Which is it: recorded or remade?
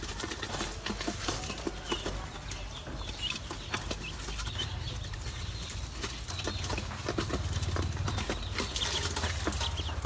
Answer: recorded